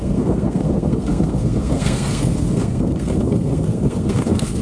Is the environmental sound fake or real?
fake